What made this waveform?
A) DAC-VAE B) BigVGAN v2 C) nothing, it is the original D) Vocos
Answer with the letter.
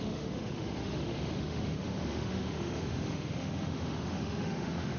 A